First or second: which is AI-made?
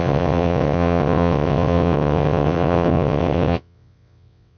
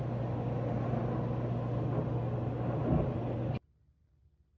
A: first